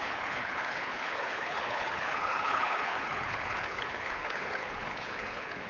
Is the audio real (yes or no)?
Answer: no